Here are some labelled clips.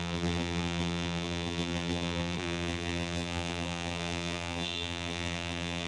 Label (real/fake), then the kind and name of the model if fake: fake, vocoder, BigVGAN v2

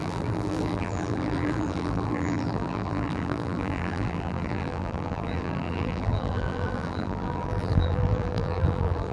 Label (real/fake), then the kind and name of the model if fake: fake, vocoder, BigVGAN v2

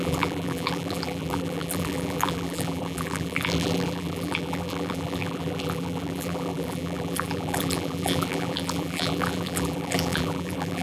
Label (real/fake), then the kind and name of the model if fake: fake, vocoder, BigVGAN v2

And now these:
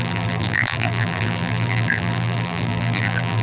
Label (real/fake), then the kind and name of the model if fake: fake, vocoder, BigVGAN v2